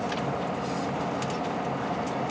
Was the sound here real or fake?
real